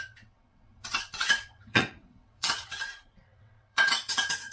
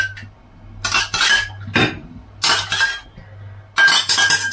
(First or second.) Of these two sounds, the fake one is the first